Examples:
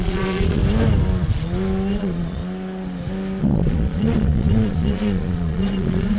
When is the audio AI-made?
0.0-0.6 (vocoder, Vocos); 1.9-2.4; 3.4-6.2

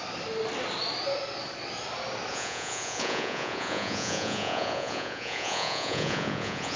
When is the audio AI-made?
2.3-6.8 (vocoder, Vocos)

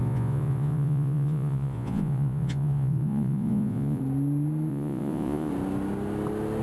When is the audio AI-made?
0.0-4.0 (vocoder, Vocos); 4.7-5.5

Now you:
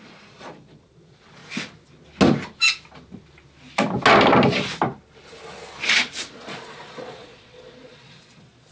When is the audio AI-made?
0.0-1.4 (vocoder, Vocos); 6.3-8.7